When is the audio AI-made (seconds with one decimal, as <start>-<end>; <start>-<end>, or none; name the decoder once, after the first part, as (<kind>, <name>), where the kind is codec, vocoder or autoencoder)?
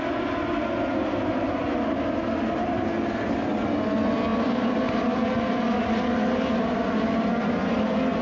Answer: none